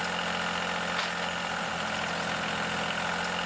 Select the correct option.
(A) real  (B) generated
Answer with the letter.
A